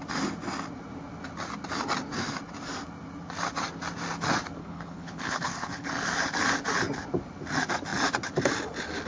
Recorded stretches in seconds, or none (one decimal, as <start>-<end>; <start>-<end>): 0.0-4.6; 5.9-9.1